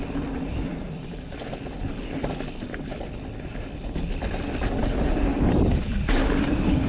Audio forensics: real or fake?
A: real